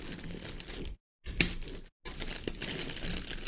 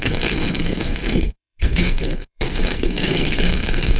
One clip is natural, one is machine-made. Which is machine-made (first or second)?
second